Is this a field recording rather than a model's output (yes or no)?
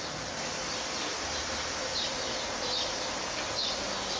yes